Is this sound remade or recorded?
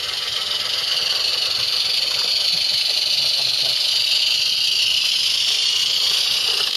remade